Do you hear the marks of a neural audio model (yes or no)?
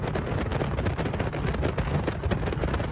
no